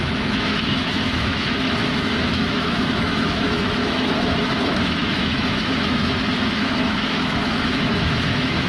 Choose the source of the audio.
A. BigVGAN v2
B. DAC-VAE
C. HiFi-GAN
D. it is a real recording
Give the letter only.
B